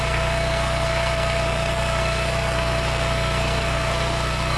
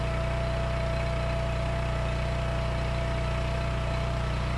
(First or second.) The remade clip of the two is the first